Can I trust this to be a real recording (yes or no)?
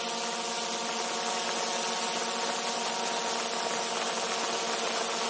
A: yes